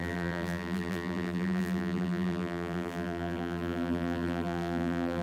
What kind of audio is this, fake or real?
fake